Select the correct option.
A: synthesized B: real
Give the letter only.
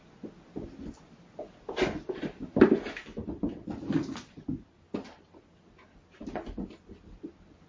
B